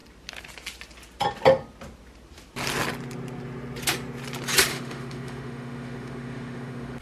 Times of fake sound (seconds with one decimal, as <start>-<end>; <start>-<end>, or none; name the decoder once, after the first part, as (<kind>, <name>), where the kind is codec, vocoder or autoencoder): 4.7-7.0 (autoencoder, DAC-VAE)